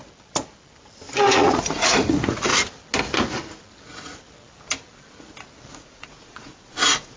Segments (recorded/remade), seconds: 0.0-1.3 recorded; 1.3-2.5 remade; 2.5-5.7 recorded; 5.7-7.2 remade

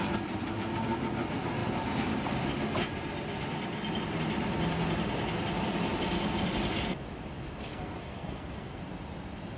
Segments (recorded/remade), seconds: 0.0-7.7 recorded; 7.7-8.8 remade; 8.8-9.6 recorded

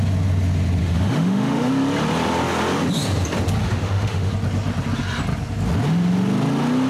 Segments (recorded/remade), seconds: 0.0-0.8 recorded; 0.8-1.7 remade; 1.7-3.6 recorded; 3.6-4.3 remade; 4.3-6.9 recorded

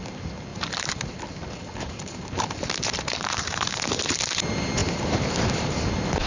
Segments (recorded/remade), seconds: 0.0-0.5 recorded; 0.5-3.9 remade; 3.9-4.8 recorded; 4.8-5.8 remade; 5.8-6.3 recorded

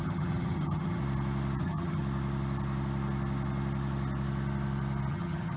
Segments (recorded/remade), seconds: 0.0-1.0 remade; 1.0-1.6 recorded; 1.6-2.0 remade; 2.0-5.1 recorded; 5.1-5.6 remade

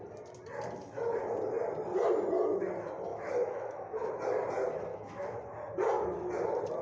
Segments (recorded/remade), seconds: 0.0-3.1 recorded; 3.1-4.1 remade; 4.1-4.9 recorded; 4.9-5.4 remade; 5.4-6.8 recorded